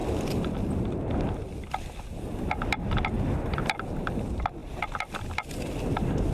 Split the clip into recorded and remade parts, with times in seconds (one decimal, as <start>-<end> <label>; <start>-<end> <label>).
0.0-4.6 recorded; 4.6-5.5 remade; 5.5-6.3 recorded